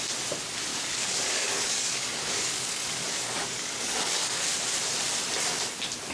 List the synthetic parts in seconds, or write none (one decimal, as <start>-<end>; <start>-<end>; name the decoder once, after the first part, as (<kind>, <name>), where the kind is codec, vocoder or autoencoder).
0.7-4.4 (codec, DAC)